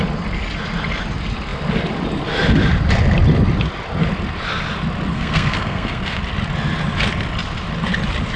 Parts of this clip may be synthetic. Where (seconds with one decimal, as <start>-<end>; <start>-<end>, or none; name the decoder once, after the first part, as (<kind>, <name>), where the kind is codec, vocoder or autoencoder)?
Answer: 5.1-6.2 (codec, SNAC)